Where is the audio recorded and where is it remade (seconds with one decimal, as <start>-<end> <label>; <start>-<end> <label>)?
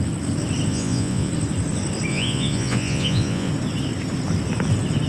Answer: 0.0-0.7 recorded; 0.7-1.3 remade; 1.3-2.1 recorded; 2.1-3.5 remade; 3.5-5.1 recorded